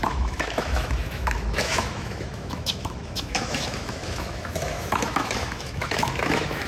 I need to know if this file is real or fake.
fake